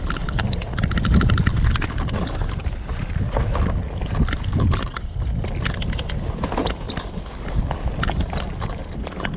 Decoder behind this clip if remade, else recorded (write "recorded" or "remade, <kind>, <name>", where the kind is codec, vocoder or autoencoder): recorded